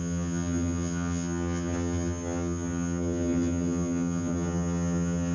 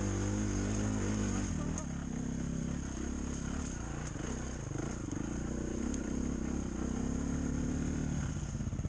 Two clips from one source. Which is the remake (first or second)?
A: first